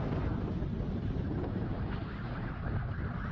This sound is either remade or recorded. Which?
recorded